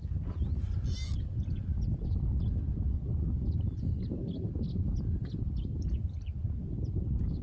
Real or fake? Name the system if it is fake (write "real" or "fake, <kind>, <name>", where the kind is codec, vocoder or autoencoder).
real